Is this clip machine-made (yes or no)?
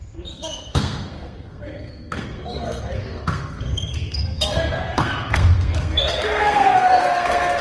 yes